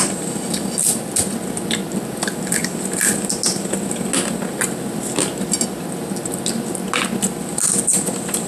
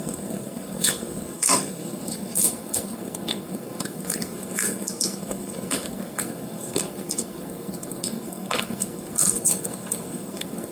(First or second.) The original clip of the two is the first